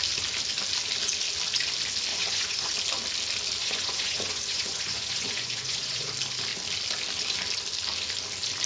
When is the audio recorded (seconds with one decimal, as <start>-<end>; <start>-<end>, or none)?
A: 0.0-2.1; 2.7-3.6; 6.1-8.7